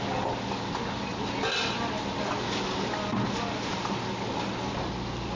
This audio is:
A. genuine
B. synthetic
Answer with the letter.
A